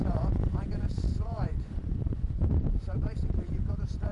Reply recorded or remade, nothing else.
remade